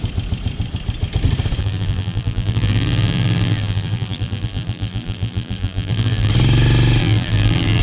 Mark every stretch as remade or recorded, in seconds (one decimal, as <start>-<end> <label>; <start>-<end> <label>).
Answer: 0.0-1.6 recorded; 1.6-6.3 remade; 6.3-7.0 recorded; 7.0-7.8 remade